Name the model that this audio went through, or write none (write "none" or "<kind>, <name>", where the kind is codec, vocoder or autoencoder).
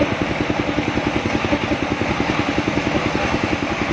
vocoder, BigVGAN v2